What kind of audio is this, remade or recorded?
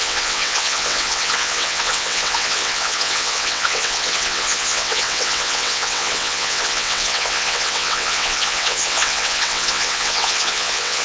remade